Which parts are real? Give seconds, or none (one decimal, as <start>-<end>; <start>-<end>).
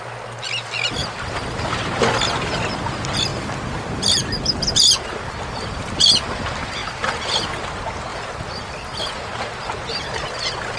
0.0-1.0; 1.7-3.3; 4.3-10.8